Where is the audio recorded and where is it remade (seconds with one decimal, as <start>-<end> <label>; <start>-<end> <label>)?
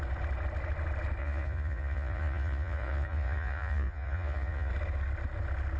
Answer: 0.0-1.2 recorded; 1.2-4.7 remade; 4.7-5.8 recorded